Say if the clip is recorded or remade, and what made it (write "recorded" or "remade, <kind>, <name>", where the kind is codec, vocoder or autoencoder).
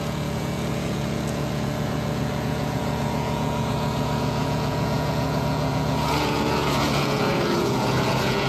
remade, vocoder, Vocos